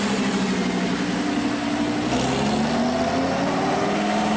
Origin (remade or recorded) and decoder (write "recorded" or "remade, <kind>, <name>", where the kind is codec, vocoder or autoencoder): recorded